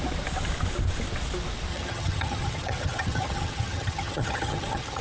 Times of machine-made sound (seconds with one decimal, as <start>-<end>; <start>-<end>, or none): 1.7-5.0